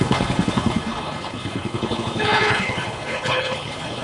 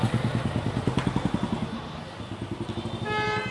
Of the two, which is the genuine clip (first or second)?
second